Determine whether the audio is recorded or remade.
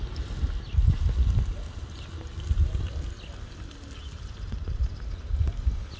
recorded